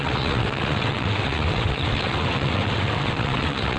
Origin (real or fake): fake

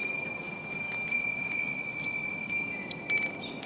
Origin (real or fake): real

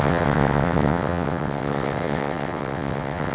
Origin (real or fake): fake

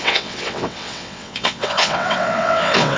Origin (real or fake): fake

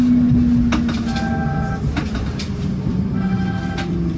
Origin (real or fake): real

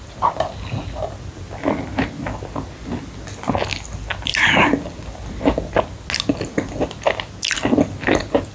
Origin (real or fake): real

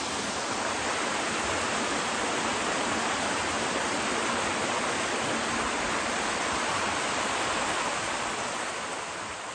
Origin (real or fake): real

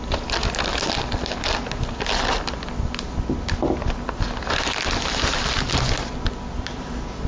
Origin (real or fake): real